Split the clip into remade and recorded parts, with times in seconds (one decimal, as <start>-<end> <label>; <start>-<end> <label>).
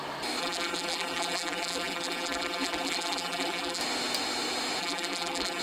0.0-0.4 recorded; 0.4-3.8 remade; 3.8-4.8 recorded; 4.8-5.6 remade